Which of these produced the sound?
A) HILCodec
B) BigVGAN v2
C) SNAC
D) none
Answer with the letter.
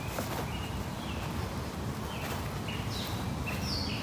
D